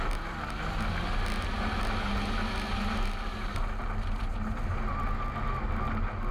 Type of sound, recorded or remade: recorded